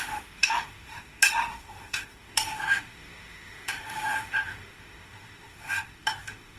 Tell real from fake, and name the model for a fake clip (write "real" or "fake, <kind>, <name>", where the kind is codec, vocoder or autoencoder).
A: fake, autoencoder, DAC-VAE